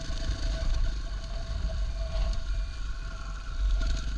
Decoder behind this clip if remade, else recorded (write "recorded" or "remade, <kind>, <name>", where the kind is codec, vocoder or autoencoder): remade, vocoder, BigVGAN v2